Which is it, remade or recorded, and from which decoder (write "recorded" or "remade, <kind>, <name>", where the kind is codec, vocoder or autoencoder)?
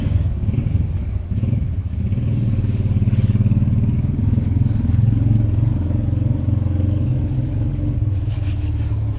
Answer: remade, codec, DAC